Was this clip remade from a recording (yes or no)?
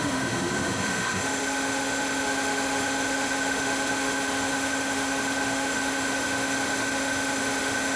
yes